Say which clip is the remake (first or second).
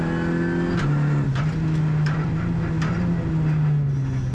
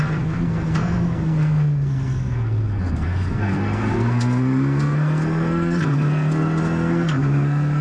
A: second